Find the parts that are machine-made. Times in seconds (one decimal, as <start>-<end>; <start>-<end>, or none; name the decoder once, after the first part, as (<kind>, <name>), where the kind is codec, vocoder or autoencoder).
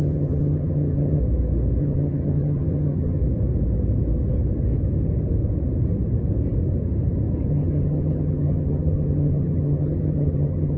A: 0.0-1.2 (vocoder, HiFi-GAN); 1.8-3.2; 7.5-10.8